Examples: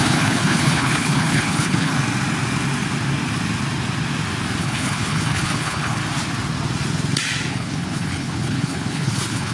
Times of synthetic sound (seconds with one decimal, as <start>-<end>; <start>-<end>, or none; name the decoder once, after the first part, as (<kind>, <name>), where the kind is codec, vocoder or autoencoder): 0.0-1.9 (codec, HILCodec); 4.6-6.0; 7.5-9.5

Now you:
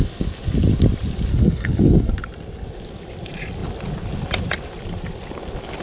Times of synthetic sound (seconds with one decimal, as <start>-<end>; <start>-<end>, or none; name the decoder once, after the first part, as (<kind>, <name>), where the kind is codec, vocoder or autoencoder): 1.3-2.1 (codec, SNAC)

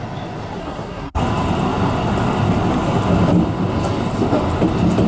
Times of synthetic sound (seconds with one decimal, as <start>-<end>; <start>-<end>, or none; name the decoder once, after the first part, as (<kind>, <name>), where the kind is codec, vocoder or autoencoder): 0.6-1.2 (codec, SNAC)